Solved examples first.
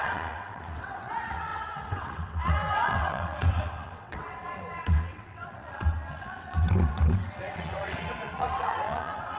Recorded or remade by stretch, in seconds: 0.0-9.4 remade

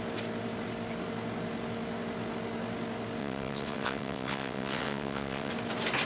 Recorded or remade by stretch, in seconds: 0.0-3.2 recorded; 3.2-5.5 remade; 5.5-6.0 recorded

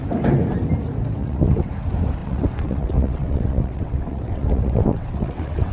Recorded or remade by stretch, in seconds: 0.0-1.2 recorded; 1.2-1.7 remade; 1.7-2.2 recorded; 2.2-5.7 remade

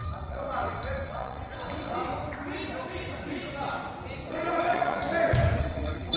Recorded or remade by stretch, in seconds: 0.0-2.0 remade; 2.0-4.3 recorded; 4.3-5.0 remade; 5.0-5.6 recorded; 5.6-6.2 remade

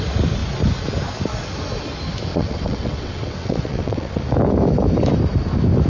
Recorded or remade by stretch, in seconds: 0.0-2.3 recorded; 2.3-4.2 remade; 4.2-5.9 recorded

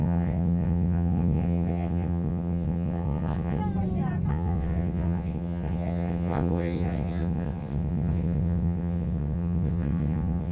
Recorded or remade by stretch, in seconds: 0.0-3.6 remade; 3.6-4.3 recorded; 4.3-10.5 remade